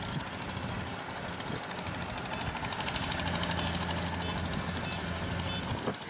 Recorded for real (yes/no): yes